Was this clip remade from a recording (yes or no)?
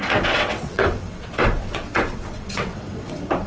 yes